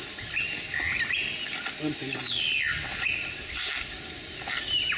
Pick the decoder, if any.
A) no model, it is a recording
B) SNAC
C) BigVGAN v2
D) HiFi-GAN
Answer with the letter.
A